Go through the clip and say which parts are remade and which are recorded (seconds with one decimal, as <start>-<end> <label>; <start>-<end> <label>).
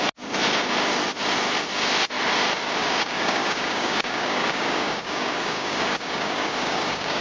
0.0-2.8 recorded; 2.8-7.2 remade